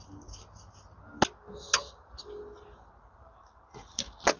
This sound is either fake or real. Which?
real